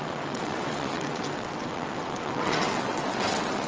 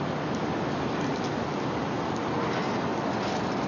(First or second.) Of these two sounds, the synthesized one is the first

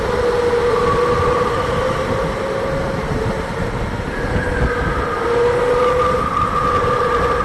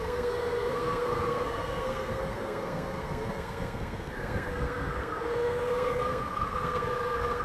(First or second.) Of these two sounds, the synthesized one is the second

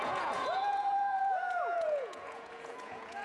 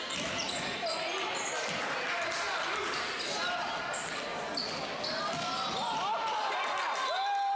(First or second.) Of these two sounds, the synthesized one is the first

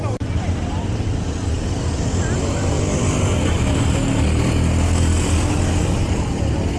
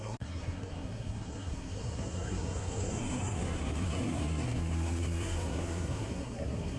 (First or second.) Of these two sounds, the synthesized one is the second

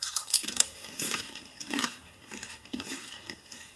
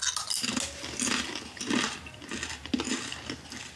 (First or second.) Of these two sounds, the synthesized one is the first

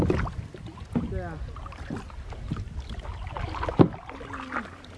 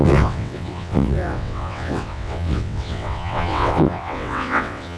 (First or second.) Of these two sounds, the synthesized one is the second